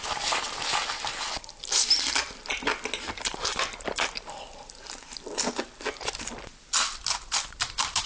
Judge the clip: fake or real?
real